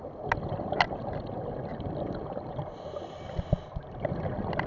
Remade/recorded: recorded